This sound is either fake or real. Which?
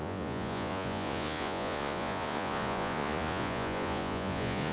fake